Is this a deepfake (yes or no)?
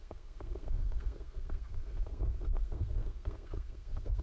yes